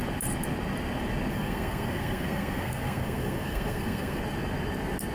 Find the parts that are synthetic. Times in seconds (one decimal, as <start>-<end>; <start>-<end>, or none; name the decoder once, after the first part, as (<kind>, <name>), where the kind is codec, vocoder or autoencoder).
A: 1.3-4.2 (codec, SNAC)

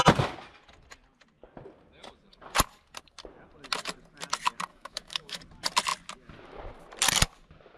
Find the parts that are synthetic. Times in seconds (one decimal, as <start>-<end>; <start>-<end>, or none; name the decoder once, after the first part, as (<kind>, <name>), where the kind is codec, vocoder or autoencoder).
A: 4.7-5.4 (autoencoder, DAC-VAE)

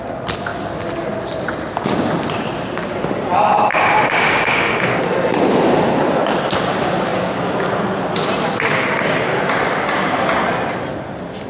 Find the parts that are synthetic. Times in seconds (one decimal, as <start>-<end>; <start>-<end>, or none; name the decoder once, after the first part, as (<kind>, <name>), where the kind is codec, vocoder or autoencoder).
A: 3.7-4.8 (autoencoder, DAC-VAE)

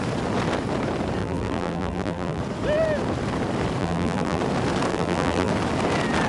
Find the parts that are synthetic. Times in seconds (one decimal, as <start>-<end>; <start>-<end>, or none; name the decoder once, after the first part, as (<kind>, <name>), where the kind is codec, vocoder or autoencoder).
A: 1.2-2.4 (vocoder, BigVGAN v2); 3.8-4.4; 4.9-5.5